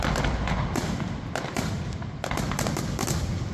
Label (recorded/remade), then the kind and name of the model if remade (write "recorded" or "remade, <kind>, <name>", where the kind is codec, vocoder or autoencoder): recorded